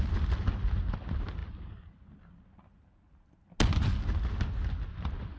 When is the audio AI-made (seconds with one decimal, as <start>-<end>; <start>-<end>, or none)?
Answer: none